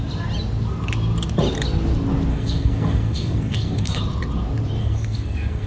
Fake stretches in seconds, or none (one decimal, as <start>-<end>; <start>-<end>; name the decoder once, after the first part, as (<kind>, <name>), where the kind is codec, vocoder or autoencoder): 2.3-4.0 (codec, SNAC); 4.8-5.7